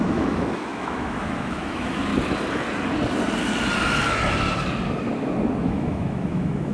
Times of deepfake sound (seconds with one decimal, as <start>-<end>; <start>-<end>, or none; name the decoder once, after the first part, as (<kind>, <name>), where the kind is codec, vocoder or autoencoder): 0.0-2.1 (autoencoder, DAC-VAE); 5.6-6.7